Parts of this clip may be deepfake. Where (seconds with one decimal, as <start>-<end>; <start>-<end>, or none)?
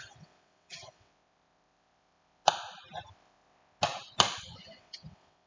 0.0-1.1; 4.4-5.5